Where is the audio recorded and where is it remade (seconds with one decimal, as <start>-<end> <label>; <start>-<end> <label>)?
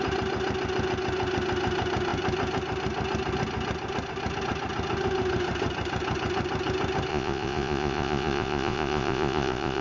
0.0-7.1 recorded; 7.1-9.8 remade